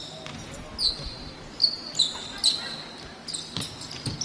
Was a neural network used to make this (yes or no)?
no